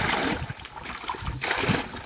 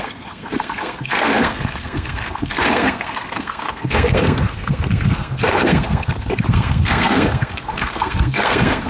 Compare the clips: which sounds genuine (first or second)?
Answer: first